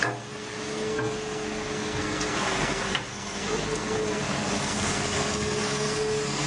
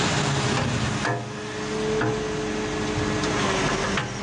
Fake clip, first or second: first